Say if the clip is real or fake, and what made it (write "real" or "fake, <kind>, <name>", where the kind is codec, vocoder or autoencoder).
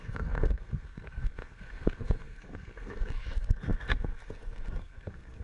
fake, codec, SNAC